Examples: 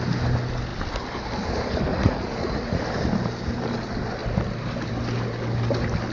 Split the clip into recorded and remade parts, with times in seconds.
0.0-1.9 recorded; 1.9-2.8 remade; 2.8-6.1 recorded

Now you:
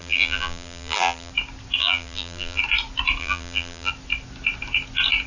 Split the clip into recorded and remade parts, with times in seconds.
0.0-1.3 remade; 1.3-1.8 recorded; 1.8-2.6 remade; 2.6-3.2 recorded; 3.2-3.9 remade; 3.9-5.3 recorded

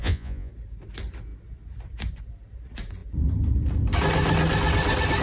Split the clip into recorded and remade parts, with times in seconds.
0.0-0.5 remade; 0.5-5.2 recorded

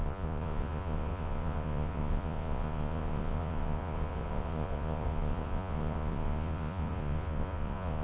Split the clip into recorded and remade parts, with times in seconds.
0.0-8.0 remade

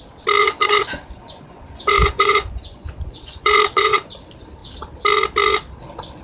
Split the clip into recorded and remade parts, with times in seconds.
0.0-0.4 recorded; 0.4-4.1 remade; 4.1-6.2 recorded